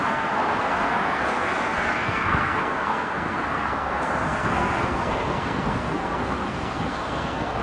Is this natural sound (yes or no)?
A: no